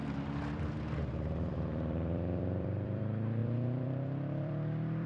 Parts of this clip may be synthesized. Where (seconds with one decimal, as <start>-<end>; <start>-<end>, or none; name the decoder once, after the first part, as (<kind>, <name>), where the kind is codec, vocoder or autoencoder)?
1.5-5.1 (vocoder, BigVGAN v2)